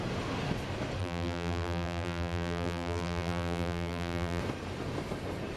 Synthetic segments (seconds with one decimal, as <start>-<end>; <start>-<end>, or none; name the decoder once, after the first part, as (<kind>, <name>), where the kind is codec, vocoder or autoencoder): 1.0-4.4 (vocoder, BigVGAN v2)